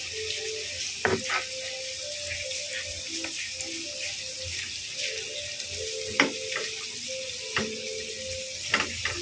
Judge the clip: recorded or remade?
recorded